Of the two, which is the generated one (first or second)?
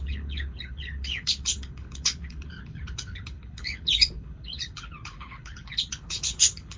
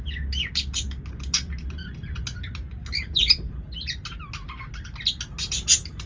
first